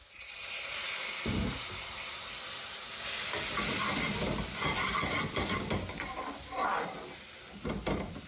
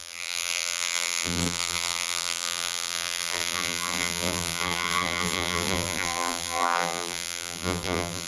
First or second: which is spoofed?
second